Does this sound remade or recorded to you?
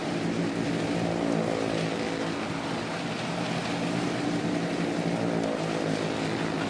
recorded